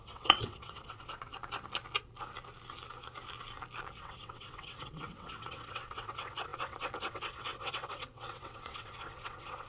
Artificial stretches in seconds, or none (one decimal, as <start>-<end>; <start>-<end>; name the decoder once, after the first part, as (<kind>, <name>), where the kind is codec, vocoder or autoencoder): 0.0-1.3 (vocoder, WaveNeXt); 4.0-9.7